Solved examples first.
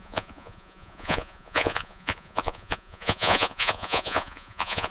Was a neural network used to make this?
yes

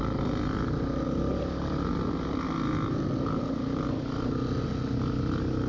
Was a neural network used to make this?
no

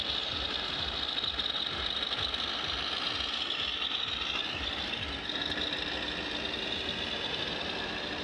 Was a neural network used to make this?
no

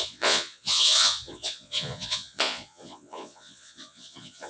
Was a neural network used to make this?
yes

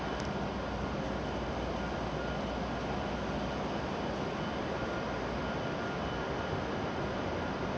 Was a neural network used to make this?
no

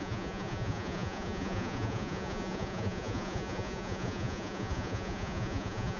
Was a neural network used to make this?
yes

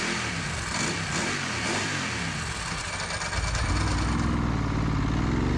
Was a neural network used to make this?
no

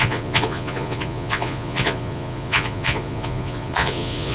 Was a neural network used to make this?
yes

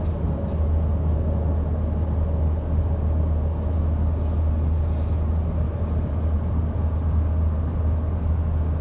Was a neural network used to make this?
no